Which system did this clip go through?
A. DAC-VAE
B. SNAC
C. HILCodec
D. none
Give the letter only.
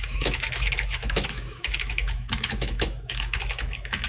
A